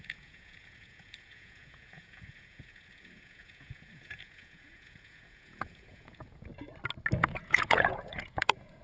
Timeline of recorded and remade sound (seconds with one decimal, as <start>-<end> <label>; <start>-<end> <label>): 0.0-6.5 remade; 6.5-7.2 recorded; 7.2-8.8 remade